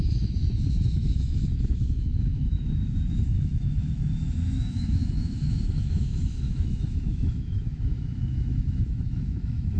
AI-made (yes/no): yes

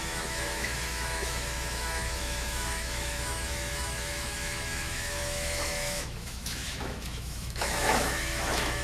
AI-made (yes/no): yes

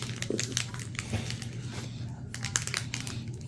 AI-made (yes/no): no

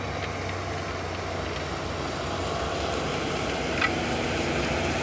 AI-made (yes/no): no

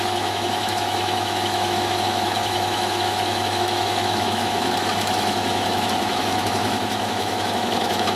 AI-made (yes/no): yes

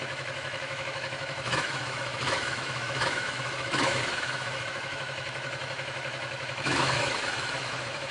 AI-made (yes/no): yes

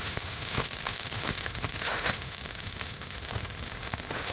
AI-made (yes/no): yes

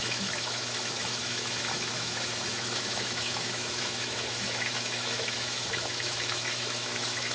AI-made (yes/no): yes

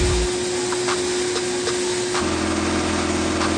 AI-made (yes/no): no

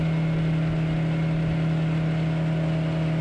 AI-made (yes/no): no